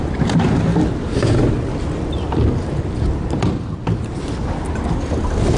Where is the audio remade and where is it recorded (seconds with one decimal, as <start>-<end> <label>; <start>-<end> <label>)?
0.0-5.6 recorded